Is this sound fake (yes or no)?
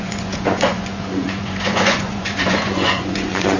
yes